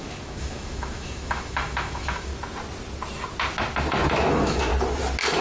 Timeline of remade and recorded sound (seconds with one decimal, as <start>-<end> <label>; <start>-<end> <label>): 0.0-2.3 remade; 2.3-4.3 recorded; 4.3-4.7 remade; 4.7-5.4 recorded